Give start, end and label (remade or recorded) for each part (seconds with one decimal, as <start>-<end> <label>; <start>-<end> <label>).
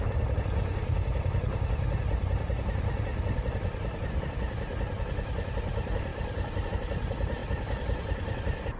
0.0-3.1 recorded; 3.1-5.0 remade; 5.0-6.1 recorded; 6.1-6.7 remade; 6.7-7.4 recorded; 7.4-8.8 remade